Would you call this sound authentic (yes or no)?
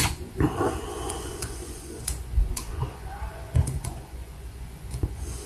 no